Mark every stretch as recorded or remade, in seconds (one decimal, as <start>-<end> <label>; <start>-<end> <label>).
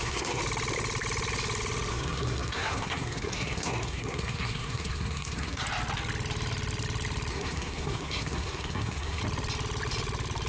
0.0-0.4 remade; 0.4-1.9 recorded; 1.9-5.6 remade; 5.6-7.3 recorded; 7.3-9.2 remade; 9.2-10.5 recorded